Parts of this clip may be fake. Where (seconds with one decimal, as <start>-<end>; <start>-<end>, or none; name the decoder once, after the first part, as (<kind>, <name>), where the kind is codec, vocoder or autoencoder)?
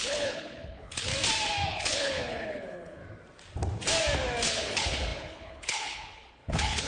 0.0-1.1 (codec, HILCodec); 1.7-3.0; 4.5-6.9